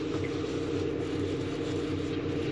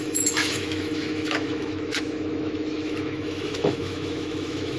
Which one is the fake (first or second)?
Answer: second